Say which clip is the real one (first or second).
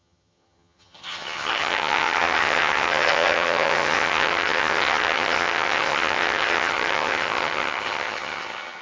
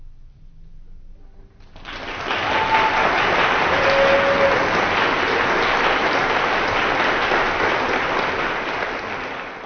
second